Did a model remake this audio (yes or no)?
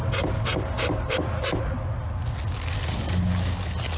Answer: no